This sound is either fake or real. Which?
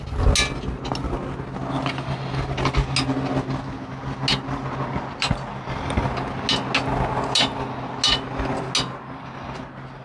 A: real